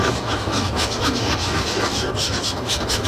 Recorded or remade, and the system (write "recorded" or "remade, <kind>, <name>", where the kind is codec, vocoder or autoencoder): remade, codec, DAC